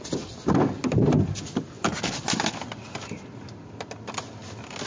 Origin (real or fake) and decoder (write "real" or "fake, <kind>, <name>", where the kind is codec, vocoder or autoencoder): real